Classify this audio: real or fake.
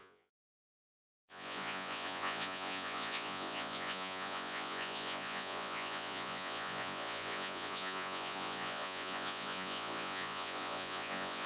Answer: fake